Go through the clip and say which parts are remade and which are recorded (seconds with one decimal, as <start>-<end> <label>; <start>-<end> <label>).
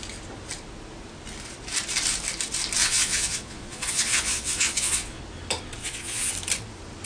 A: 0.0-2.8 recorded; 2.8-5.2 remade; 5.2-5.8 recorded; 5.8-6.3 remade; 6.3-7.1 recorded